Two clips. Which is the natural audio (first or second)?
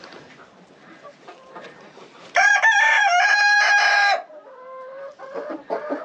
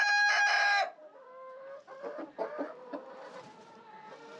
second